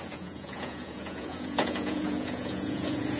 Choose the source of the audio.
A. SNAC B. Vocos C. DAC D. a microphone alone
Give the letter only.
B